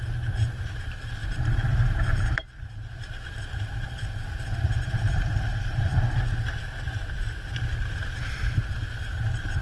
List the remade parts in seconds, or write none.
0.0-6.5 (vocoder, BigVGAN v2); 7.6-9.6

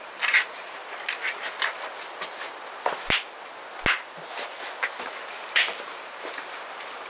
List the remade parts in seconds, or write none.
0.0-0.8 (vocoder, BigVGAN v2); 5.1-7.1

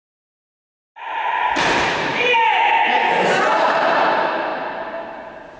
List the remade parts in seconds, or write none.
0.0-0.8 (vocoder, BigVGAN v2); 1.6-4.5

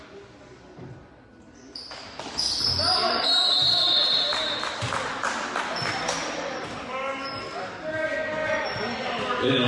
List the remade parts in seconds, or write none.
none

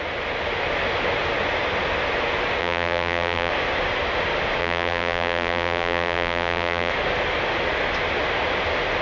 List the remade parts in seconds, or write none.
2.6-3.5 (vocoder, BigVGAN v2); 4.6-6.9

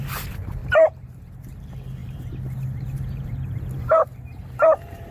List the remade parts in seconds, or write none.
0.6-1.4 (vocoder, BigVGAN v2); 2.0-5.1

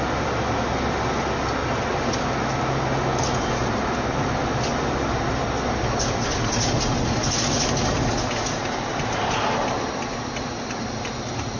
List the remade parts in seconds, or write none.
none

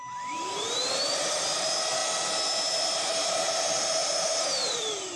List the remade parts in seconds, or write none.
0.0-2.0 (vocoder, BigVGAN v2); 2.7-5.2